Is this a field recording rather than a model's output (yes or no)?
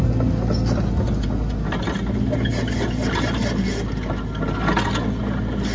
yes